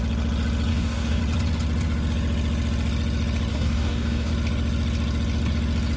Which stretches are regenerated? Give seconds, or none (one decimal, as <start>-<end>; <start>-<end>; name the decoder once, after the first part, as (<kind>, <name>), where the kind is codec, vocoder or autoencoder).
0.7-1.2 (codec, DAC); 3.5-4.3